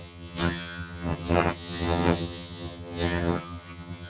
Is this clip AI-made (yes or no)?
yes